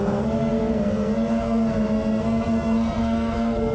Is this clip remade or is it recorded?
remade